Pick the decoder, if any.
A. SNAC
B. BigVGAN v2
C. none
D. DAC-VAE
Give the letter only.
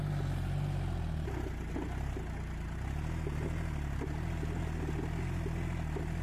C